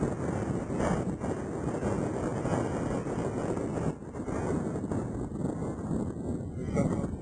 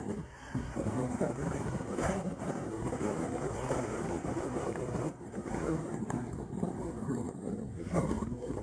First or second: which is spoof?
second